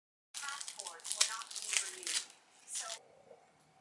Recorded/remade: recorded